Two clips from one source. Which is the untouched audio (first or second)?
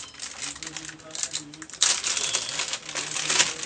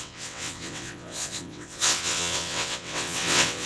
first